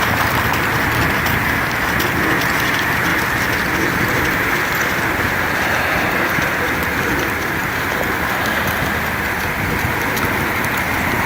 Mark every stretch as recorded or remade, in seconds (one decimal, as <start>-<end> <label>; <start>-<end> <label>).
0.0-11.3 recorded